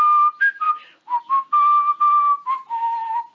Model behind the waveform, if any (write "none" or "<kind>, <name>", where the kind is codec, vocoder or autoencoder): none